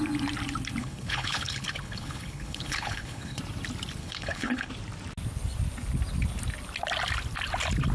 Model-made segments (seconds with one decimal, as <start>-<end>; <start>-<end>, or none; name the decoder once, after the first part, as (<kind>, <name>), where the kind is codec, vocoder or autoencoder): 0.8-3.4 (codec, HILCodec); 4.0-4.7